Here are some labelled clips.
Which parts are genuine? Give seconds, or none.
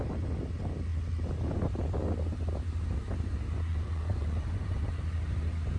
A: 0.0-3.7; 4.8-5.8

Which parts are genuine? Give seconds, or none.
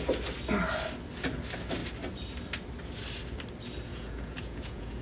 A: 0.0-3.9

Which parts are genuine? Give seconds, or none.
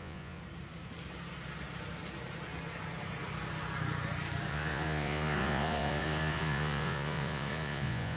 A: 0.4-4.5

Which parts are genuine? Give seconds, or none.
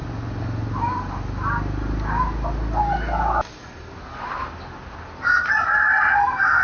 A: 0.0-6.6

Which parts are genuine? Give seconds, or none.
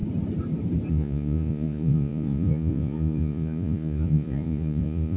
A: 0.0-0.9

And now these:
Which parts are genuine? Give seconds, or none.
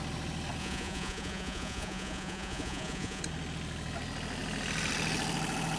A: 0.0-0.6; 3.2-5.8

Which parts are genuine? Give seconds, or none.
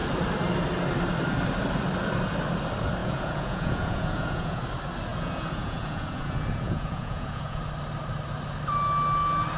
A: 0.0-3.0; 4.6-5.1; 7.6-9.6